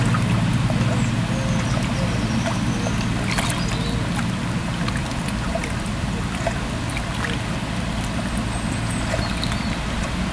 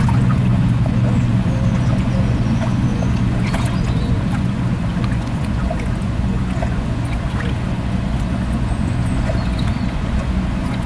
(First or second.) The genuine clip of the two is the first